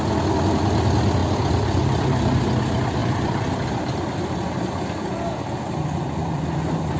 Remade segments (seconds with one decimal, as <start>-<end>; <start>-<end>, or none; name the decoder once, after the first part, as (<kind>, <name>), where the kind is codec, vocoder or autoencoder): 1.2-2.4 (vocoder, BigVGAN v2); 3.0-4.7